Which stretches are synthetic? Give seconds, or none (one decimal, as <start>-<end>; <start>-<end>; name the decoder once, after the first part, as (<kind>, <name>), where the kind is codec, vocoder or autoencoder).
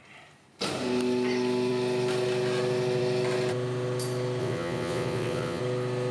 4.4-5.6 (vocoder, WaveNeXt)